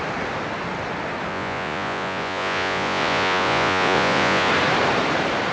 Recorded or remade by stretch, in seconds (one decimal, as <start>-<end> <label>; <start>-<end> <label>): 0.0-1.3 recorded; 1.3-4.5 remade; 4.5-5.5 recorded